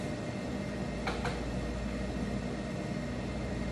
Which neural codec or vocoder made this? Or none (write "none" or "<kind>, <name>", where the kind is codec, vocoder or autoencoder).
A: none